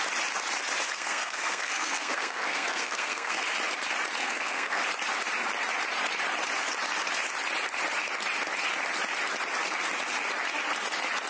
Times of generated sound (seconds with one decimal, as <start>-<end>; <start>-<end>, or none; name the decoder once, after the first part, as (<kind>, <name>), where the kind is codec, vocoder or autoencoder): 0.9-3.4 (codec, SNAC); 4.2-4.8